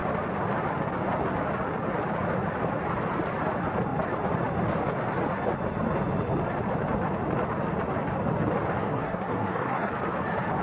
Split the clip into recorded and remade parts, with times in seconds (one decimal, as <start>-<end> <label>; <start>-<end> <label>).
0.0-8.8 recorded; 8.8-9.9 remade; 9.9-10.6 recorded